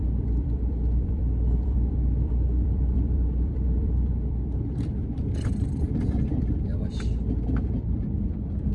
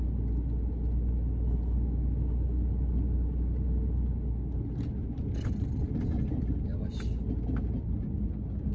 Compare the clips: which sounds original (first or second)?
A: second